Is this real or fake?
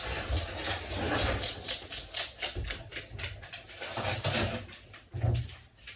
real